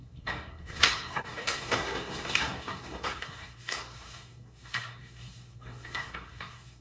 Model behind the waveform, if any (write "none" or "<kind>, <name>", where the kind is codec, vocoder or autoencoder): codec, SNAC